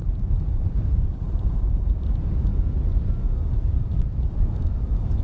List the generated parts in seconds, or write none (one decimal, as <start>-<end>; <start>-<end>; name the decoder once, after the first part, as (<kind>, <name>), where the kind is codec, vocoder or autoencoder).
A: 0.0-2.5 (vocoder, BigVGAN v2); 3.7-5.2